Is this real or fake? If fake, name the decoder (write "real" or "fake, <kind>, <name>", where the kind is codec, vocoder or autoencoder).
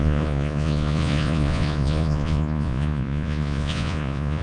fake, vocoder, Vocos